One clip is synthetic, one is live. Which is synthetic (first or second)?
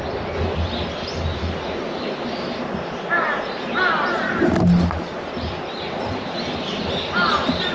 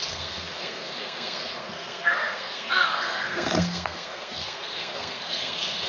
second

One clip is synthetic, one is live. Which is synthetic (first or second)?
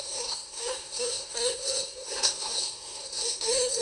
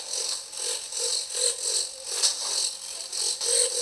first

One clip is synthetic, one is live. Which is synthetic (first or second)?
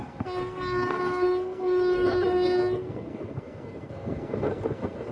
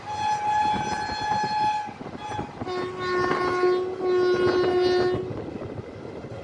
first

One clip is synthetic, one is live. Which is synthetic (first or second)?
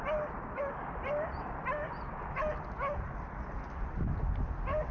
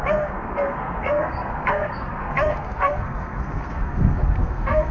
second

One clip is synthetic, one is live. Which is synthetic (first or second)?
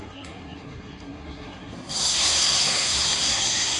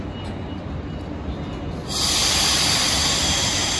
first